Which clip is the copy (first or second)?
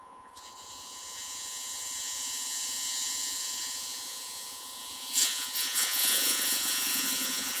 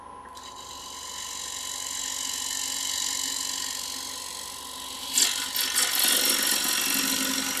first